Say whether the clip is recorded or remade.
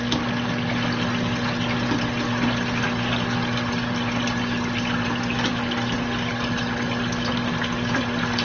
recorded